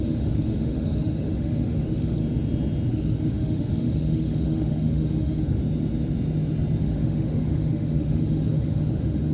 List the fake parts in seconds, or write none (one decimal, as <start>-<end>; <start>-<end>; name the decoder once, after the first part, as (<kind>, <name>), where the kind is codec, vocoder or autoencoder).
0.0-2.2 (autoencoder, DAC-VAE); 2.9-5.6; 6.8-9.3